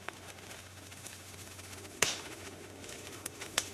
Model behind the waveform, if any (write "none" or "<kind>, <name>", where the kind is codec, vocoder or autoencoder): autoencoder, DAC-VAE